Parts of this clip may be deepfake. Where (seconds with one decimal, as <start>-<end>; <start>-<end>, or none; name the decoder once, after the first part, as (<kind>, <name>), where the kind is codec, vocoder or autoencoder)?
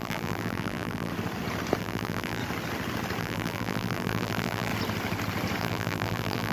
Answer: 0.0-1.1 (vocoder, BigVGAN v2); 1.8-2.4; 3.2-4.7; 5.6-6.5